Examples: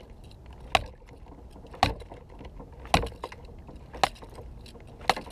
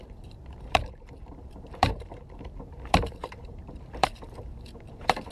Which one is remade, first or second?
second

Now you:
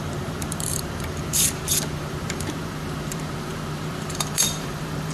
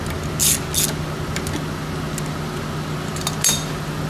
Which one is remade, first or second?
first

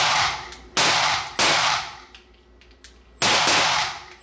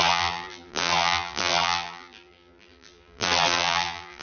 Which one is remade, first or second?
second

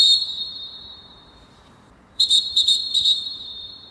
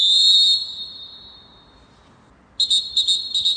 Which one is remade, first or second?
first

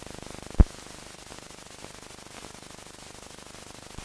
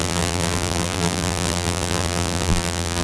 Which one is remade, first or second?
second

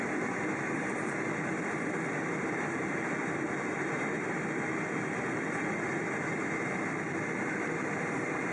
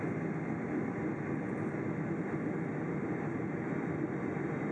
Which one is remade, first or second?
first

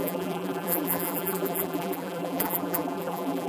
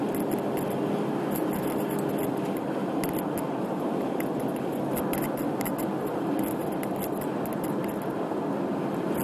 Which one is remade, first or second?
first